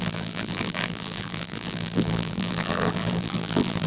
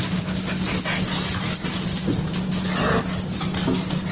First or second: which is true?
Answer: second